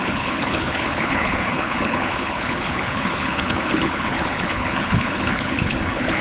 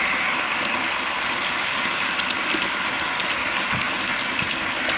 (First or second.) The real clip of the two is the second